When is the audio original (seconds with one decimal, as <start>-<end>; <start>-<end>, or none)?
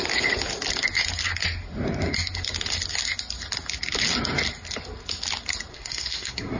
0.0-5.7